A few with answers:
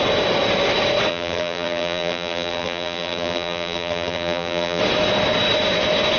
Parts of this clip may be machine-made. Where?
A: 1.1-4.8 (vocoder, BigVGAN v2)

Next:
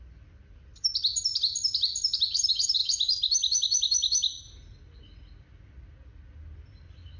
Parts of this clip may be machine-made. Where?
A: none

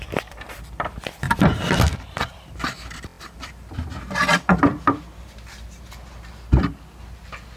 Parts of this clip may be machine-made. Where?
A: 0.0-4.7 (vocoder, BigVGAN v2)

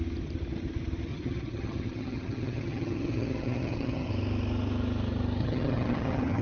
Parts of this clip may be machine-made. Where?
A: 1.1-4.1 (vocoder, HiFi-GAN); 5.4-6.4

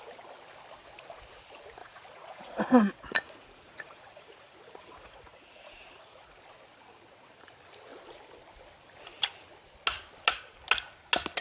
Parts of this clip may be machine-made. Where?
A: 1.8-6.3 (vocoder, Vocos)